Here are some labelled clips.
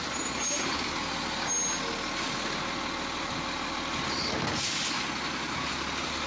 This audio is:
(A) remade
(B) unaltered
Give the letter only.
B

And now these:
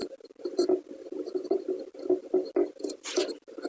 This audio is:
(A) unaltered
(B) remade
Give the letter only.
A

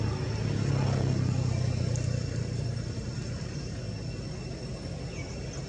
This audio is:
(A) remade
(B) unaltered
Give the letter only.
B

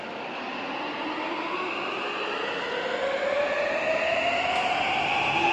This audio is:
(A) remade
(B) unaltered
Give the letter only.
B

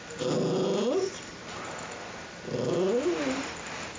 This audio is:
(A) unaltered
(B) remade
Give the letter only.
A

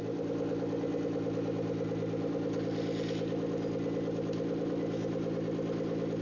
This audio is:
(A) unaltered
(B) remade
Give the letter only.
A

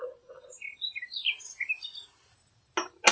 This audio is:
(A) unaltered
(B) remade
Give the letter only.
A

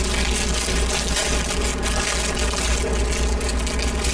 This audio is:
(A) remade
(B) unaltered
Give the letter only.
B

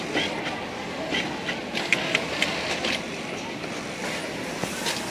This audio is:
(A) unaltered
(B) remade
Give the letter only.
A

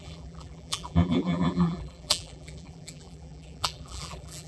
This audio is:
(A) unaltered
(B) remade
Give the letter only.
B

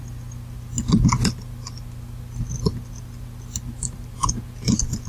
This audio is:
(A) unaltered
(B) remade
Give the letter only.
A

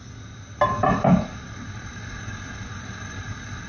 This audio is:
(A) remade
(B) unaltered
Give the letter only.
B